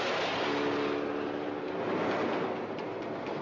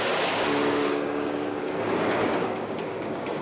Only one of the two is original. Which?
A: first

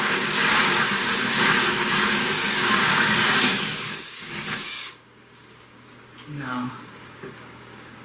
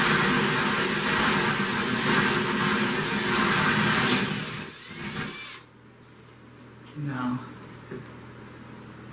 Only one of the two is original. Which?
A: second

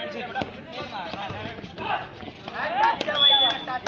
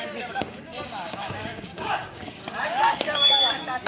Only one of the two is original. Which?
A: first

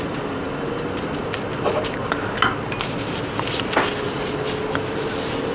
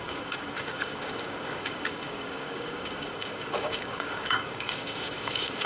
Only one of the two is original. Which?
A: first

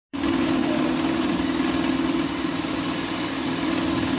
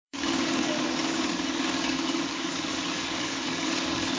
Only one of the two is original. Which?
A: first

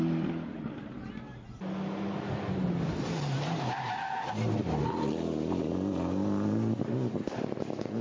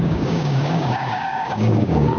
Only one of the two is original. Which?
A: first